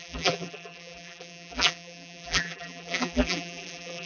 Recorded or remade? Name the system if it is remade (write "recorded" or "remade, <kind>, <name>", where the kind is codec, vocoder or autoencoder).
remade, vocoder, BigVGAN v2